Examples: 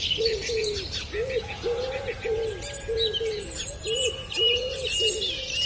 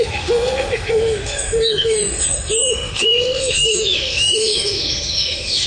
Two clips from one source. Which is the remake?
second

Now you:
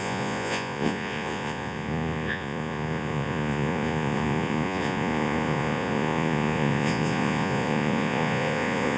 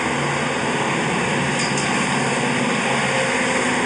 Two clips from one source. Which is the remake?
first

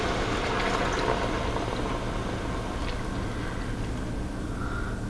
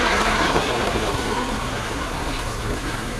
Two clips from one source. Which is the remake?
second